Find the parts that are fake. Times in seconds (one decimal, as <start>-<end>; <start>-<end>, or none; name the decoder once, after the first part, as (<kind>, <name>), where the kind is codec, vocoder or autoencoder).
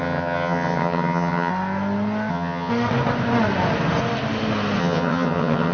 0.0-1.5 (vocoder, HiFi-GAN); 2.3-2.7; 4.8-5.7